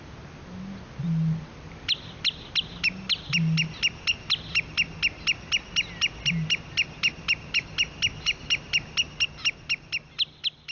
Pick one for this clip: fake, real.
real